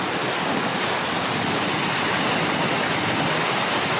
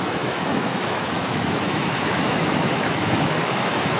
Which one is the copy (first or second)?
second